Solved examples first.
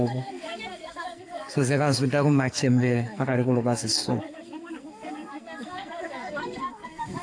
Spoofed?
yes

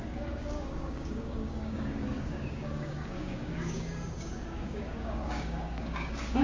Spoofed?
yes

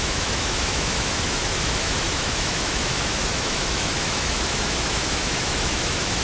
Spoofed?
yes